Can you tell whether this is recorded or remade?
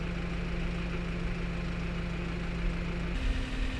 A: recorded